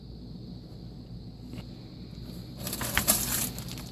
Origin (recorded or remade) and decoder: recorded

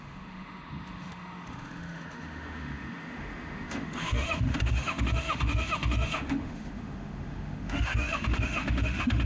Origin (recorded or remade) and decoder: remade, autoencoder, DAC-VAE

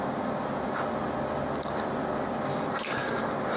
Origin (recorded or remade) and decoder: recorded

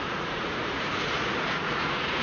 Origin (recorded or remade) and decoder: remade, vocoder, Vocos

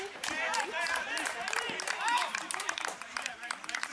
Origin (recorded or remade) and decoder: remade, vocoder, BigVGAN v2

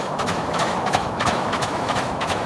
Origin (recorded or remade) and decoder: remade, autoencoder, DAC-VAE